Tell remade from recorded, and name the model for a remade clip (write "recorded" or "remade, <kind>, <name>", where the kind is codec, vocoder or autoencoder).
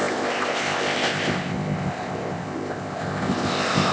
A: remade, codec, ZipCodec